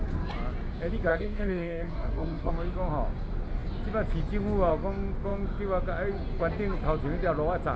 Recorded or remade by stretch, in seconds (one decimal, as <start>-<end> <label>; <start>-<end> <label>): 0.0-1.1 recorded; 1.1-2.5 remade; 2.5-7.8 recorded